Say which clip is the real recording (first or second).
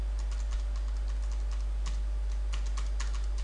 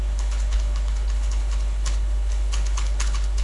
first